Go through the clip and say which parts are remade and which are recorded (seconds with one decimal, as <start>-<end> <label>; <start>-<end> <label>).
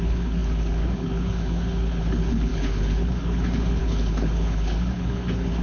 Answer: 0.0-5.6 remade